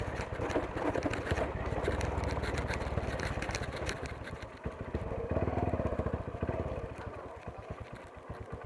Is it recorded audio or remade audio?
recorded